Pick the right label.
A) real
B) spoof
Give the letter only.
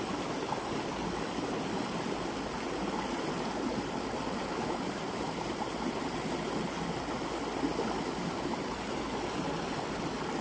A